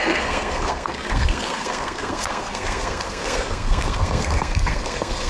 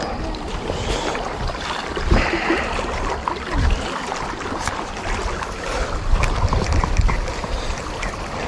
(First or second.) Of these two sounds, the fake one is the first